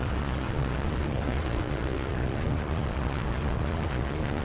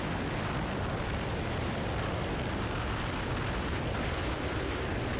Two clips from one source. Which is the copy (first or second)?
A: first